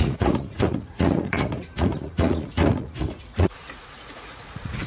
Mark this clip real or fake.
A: fake